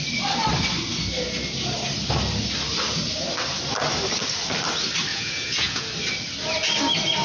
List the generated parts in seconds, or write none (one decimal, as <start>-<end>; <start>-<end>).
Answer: 5.1-5.9